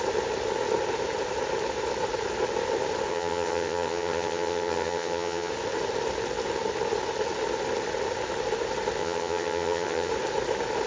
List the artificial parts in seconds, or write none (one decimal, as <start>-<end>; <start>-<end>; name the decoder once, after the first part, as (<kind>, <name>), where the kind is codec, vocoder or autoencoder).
3.1-5.5 (vocoder, HiFi-GAN); 9.0-10.1